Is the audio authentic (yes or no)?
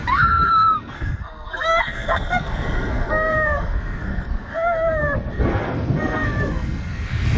no